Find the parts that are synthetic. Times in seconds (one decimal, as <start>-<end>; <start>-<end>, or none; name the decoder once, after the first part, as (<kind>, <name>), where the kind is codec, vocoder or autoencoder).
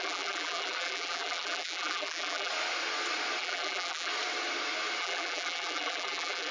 0.0-2.5 (vocoder, BigVGAN v2); 3.4-4.1; 5.0-6.5